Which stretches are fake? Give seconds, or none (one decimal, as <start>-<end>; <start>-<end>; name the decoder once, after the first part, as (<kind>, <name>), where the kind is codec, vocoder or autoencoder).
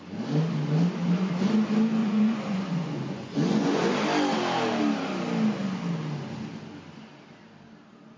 2.0-3.9 (vocoder, Vocos)